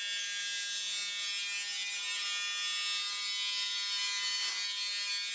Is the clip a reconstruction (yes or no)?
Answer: no